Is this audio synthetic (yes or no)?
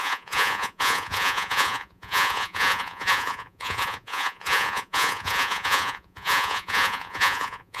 yes